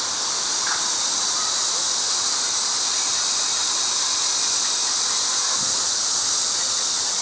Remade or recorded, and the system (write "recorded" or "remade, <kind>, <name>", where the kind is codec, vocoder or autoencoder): recorded